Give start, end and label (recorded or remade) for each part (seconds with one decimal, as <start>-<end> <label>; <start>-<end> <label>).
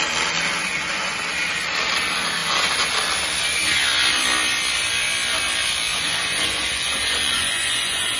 0.0-0.6 recorded; 0.6-1.2 remade; 1.2-2.4 recorded; 2.4-2.9 remade; 2.9-5.9 recorded; 5.9-8.2 remade